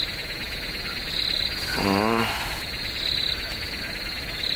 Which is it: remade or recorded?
recorded